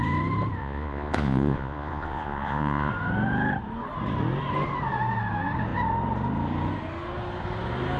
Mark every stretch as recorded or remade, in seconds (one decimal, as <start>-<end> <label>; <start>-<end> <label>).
0.0-0.6 recorded; 0.6-2.9 remade; 2.9-8.0 recorded